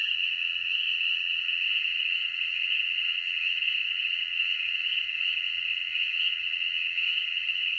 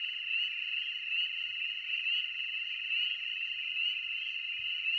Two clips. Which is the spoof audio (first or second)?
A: first